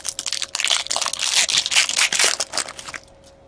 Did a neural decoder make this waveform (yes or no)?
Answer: no